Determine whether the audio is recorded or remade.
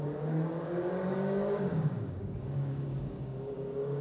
remade